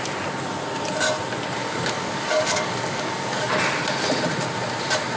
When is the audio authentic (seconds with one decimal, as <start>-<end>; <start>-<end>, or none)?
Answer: 0.0-1.6; 3.5-5.2